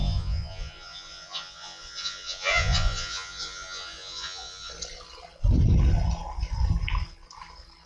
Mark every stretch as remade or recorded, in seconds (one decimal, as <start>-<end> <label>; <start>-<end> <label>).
0.0-4.7 remade; 4.7-7.9 recorded